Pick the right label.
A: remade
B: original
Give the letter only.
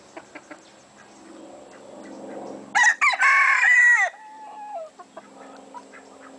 B